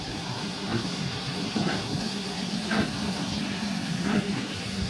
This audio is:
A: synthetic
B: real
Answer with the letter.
A